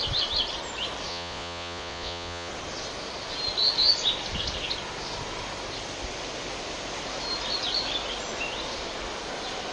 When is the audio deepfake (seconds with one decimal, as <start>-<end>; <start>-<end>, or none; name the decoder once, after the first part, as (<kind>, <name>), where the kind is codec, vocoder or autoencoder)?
1.1-2.5 (vocoder, Vocos)

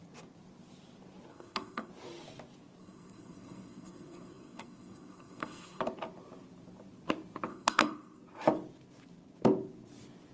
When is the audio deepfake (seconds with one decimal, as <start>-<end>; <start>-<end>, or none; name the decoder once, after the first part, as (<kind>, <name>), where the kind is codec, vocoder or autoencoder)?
1.3-1.9 (codec, SNAC); 2.8-5.8; 7.5-8.2

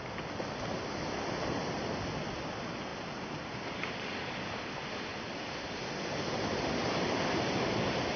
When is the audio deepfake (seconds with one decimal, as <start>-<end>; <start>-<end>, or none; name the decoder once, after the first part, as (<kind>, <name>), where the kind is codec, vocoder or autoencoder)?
none

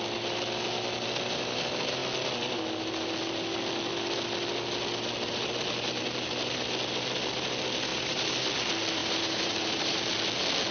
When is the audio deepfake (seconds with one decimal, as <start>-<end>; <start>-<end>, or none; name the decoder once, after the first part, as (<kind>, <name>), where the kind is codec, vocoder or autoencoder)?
7.9-8.4 (vocoder, BigVGAN v2); 9.0-10.0

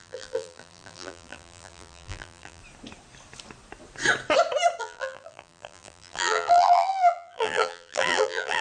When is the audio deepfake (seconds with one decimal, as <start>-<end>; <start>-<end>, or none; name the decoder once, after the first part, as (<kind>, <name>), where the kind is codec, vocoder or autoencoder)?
0.0-2.6 (vocoder, BigVGAN v2); 4.8-8.6